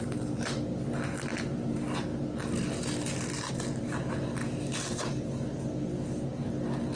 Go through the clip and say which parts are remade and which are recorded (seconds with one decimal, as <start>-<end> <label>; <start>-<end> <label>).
0.0-7.0 recorded